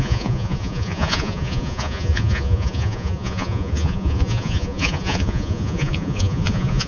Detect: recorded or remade remade